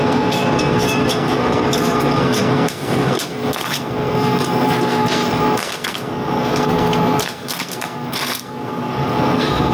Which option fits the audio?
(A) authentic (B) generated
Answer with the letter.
B